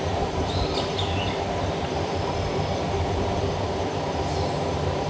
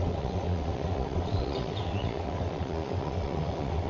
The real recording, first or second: first